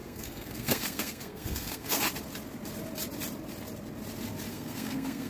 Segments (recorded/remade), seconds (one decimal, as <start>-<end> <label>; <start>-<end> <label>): 0.0-2.0 remade; 2.0-4.5 recorded; 4.5-5.3 remade